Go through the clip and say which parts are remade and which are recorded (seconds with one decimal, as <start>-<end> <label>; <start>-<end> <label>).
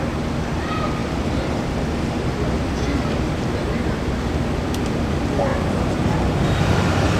0.0-7.2 remade